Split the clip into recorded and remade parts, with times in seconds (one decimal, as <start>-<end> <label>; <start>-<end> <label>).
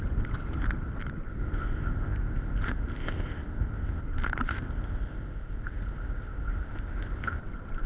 0.0-1.4 recorded; 1.4-4.0 remade; 4.0-4.5 recorded; 4.5-7.4 remade; 7.4-7.9 recorded